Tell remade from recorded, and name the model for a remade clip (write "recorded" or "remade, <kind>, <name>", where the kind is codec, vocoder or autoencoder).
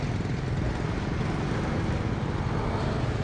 recorded